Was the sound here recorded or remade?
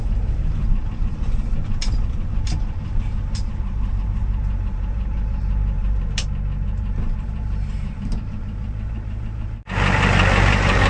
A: remade